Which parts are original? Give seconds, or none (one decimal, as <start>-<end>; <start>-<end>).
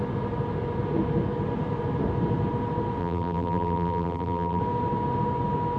0.0-3.0; 4.6-5.8